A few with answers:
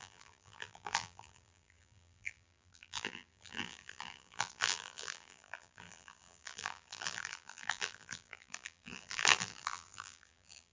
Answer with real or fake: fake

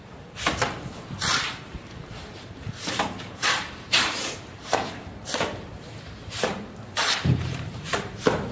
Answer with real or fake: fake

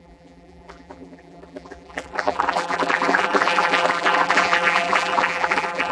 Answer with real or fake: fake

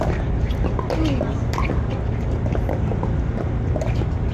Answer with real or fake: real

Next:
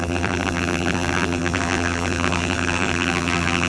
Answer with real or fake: fake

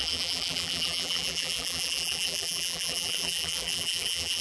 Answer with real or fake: fake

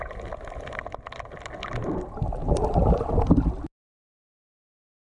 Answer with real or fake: real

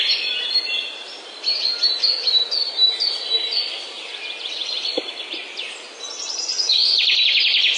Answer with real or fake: fake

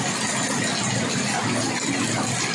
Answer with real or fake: real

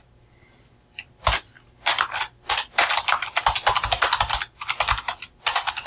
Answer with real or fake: real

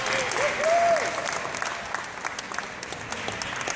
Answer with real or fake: real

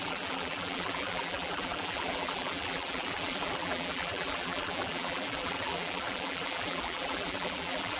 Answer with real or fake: fake